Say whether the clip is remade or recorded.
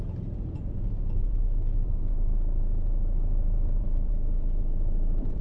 remade